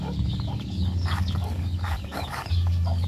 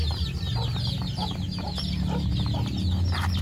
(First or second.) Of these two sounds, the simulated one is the first